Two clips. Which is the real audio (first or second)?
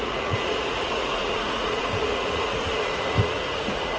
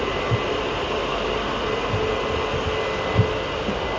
second